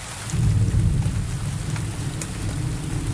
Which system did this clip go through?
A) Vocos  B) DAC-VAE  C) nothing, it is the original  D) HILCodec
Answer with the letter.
C